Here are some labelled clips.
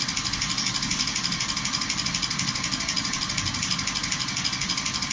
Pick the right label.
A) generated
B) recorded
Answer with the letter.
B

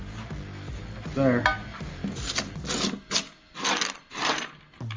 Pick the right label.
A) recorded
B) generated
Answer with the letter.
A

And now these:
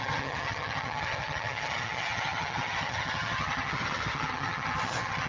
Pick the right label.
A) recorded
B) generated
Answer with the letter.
B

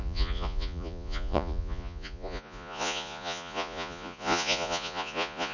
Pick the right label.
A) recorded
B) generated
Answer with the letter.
B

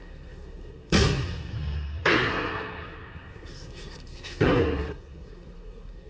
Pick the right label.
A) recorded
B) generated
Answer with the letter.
B